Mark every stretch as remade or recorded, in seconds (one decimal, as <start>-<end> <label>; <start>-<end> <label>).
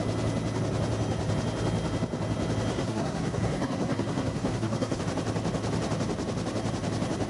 0.0-2.7 recorded; 2.7-5.0 remade; 5.0-7.3 recorded